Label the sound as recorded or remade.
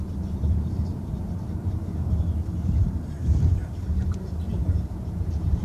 remade